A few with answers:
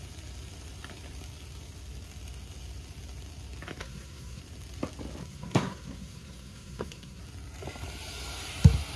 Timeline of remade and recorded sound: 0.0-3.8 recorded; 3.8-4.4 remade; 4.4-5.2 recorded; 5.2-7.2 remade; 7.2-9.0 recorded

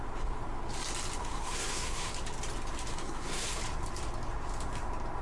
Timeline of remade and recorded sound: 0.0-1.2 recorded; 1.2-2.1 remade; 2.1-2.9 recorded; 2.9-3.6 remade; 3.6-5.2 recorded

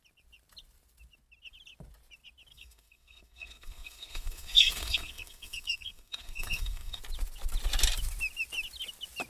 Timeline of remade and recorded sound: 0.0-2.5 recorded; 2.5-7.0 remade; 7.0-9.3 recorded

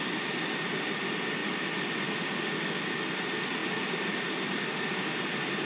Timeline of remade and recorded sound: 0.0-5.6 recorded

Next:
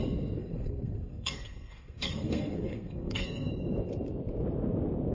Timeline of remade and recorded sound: 0.0-0.4 recorded; 0.4-3.5 remade; 3.5-5.1 recorded

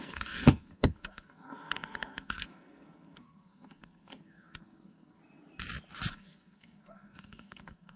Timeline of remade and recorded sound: 0.0-5.2 remade; 5.2-6.1 recorded; 6.1-8.0 remade

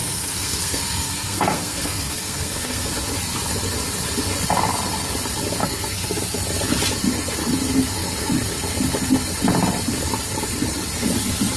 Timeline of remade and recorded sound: 0.0-2.9 remade; 2.9-5.6 recorded; 5.6-6.2 remade; 6.2-11.6 recorded